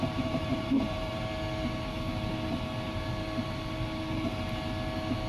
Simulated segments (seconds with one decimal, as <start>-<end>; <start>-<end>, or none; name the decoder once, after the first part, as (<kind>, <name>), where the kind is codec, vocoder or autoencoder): 0.5-1.3 (vocoder, BigVGAN v2)